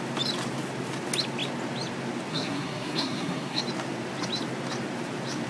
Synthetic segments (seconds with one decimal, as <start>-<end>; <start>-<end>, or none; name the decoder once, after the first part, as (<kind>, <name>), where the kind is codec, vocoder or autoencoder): 2.3-3.6 (codec, SNAC)

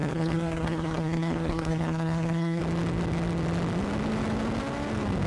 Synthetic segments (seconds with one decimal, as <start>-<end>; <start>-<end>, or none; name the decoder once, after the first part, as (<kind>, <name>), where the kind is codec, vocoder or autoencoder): 0.0-2.6 (codec, SNAC)

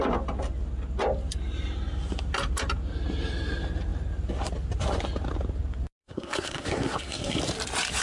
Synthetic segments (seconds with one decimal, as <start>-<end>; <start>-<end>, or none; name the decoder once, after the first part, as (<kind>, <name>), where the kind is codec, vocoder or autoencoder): 6.0-7.4 (codec, SNAC)

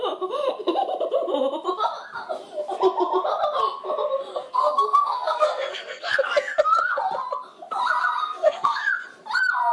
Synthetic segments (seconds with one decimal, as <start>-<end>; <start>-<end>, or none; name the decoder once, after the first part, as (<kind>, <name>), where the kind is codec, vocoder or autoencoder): 4.3-7.0 (codec, SNAC); 8.2-8.8